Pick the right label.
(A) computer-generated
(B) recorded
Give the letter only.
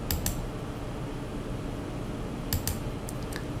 B